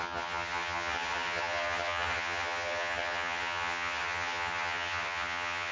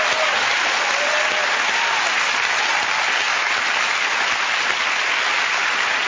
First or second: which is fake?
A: first